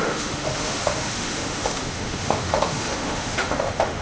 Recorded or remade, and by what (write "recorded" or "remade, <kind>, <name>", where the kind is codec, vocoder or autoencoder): remade, autoencoder, DAC-VAE